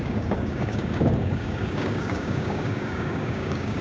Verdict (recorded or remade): remade